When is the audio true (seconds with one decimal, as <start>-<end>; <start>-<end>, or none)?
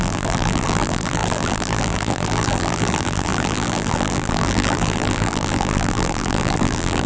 none